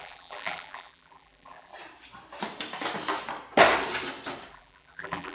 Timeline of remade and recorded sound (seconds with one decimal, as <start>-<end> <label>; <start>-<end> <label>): 0.0-1.7 remade; 1.7-4.5 recorded; 4.5-5.3 remade